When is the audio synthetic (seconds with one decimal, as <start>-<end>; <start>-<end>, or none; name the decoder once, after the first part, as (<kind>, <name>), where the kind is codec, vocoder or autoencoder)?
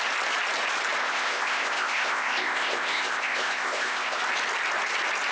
1.0-4.2 (codec, ZipCodec)